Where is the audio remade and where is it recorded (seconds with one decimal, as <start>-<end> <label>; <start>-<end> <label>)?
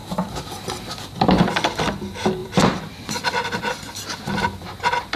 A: 0.0-1.4 remade; 1.4-2.4 recorded; 2.4-3.6 remade; 3.6-5.2 recorded